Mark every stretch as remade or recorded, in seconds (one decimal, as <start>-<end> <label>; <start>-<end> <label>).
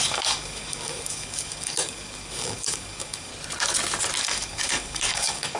0.0-3.3 remade; 3.3-4.2 recorded; 4.2-5.6 remade